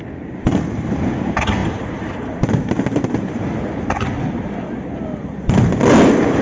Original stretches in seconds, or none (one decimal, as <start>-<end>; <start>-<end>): 0.0-6.4